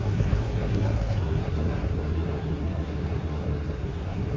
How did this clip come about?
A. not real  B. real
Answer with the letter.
A